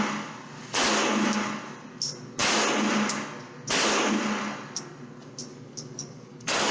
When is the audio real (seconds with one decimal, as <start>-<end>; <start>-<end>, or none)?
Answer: 0.0-5.5